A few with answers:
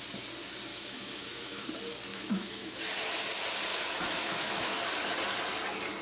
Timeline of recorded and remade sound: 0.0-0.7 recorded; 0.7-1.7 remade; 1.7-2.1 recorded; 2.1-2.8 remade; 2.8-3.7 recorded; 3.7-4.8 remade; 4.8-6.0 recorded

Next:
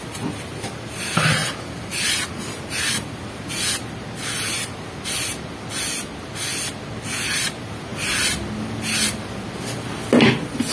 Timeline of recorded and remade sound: 0.0-10.7 recorded

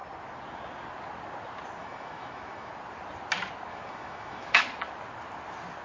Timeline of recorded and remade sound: 0.0-1.8 recorded; 1.8-2.7 remade; 2.7-3.7 recorded; 3.7-4.6 remade; 4.6-5.8 recorded